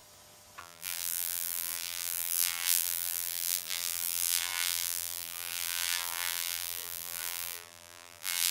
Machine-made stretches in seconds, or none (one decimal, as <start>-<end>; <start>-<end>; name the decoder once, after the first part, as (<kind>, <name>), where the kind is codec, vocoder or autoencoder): 0.6-8.5 (vocoder, BigVGAN v2)